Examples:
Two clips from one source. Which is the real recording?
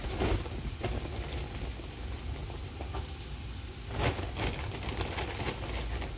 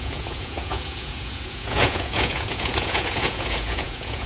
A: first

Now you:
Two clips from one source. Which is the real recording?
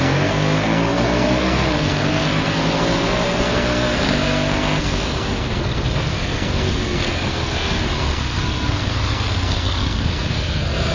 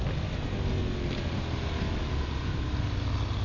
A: second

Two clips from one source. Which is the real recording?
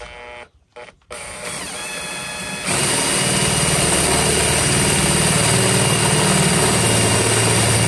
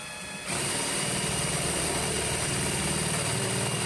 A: first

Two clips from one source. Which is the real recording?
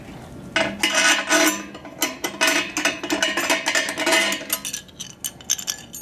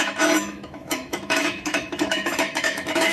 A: first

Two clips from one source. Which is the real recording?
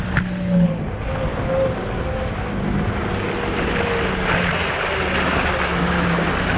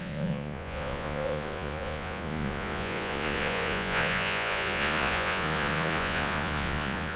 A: first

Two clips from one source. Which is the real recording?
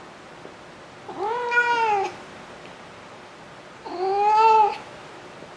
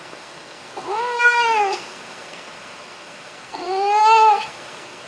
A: first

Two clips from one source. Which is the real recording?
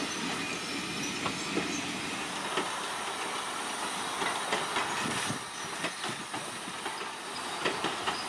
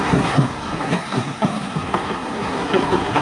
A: first